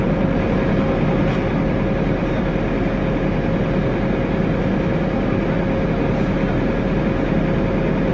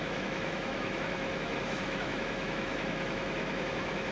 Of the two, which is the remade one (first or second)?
second